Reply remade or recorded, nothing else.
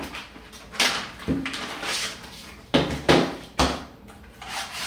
remade